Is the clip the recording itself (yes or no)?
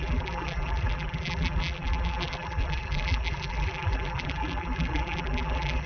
no